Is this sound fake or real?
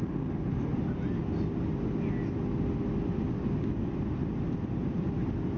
real